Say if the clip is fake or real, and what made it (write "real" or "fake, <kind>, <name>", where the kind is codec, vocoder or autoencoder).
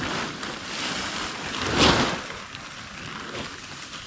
real